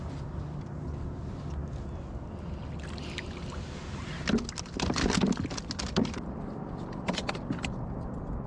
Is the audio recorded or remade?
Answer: recorded